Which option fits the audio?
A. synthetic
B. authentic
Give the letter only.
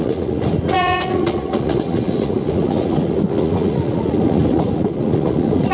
A